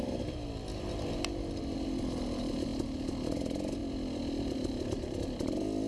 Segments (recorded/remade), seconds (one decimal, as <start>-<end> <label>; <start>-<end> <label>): 0.0-5.9 recorded

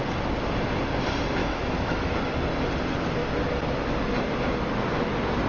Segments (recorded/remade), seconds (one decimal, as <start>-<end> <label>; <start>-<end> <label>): 0.0-1.4 recorded; 1.4-2.1 remade; 2.1-5.5 recorded

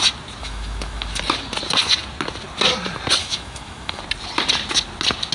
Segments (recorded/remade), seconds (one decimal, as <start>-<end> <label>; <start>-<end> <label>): 0.0-0.4 recorded; 0.4-1.2 remade; 1.2-3.2 recorded; 3.2-4.0 remade; 4.0-5.3 recorded

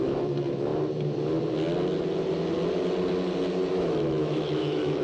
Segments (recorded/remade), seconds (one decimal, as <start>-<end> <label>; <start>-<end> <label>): 0.0-0.7 remade; 0.7-3.7 recorded; 3.7-5.0 remade

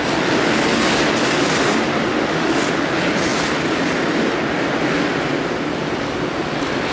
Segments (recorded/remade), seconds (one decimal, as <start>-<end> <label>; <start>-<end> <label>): 0.0-2.1 recorded; 2.1-2.7 remade; 2.7-6.9 recorded

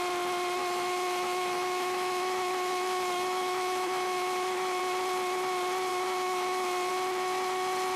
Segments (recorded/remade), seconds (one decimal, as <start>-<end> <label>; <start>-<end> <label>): 0.0-0.6 recorded; 0.6-4.8 remade; 4.8-5.9 recorded; 5.9-6.9 remade; 6.9-8.0 recorded